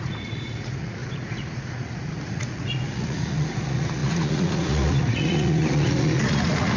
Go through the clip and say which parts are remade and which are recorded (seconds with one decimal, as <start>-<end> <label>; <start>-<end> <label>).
0.0-6.8 remade